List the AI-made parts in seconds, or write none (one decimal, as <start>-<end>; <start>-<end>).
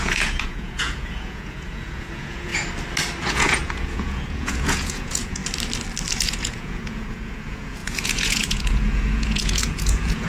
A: 0.0-2.5; 3.2-5.4; 6.1-10.3